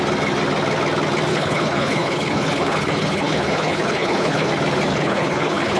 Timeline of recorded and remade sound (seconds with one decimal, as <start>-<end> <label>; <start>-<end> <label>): 0.0-1.3 recorded; 1.3-4.5 remade; 4.5-4.9 recorded; 4.9-5.8 remade